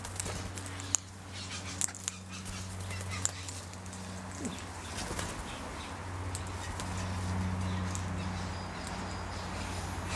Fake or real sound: real